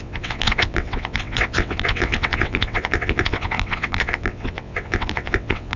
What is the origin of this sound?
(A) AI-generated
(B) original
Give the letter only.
A